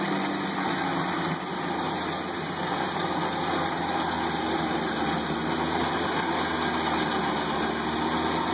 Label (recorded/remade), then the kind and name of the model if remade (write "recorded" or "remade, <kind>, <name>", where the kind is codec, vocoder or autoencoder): recorded